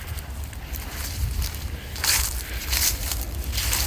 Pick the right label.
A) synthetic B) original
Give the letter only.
A